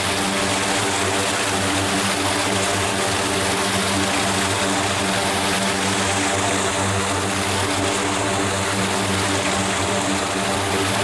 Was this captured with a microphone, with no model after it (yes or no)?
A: yes